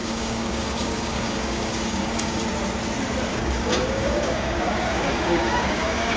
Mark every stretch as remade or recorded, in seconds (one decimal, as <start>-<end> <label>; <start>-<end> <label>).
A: 0.0-2.4 remade; 2.4-3.3 recorded; 3.3-6.2 remade